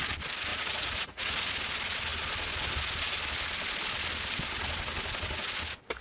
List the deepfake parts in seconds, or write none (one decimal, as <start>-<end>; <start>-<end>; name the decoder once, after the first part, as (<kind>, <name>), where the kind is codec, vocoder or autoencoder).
0.5-1.5 (vocoder, Vocos)